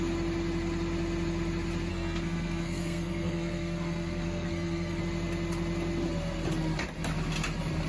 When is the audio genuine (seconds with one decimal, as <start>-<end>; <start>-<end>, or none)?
0.0-1.9; 5.0-7.9